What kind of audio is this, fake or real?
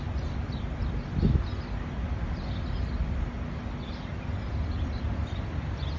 real